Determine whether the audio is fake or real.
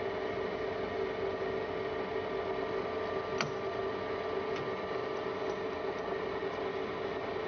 real